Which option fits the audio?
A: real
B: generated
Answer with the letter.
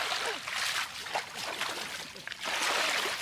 A